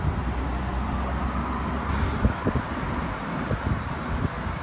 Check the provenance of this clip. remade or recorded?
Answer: recorded